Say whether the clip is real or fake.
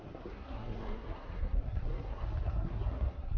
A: fake